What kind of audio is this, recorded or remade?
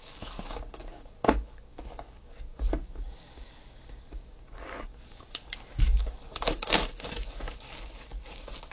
remade